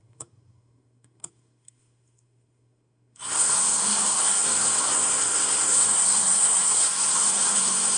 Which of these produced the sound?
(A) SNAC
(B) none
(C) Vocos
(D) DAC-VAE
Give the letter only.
A